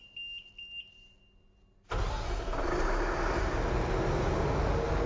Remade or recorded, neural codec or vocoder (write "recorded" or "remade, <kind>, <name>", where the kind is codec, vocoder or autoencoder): recorded